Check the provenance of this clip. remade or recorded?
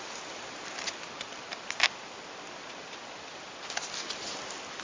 recorded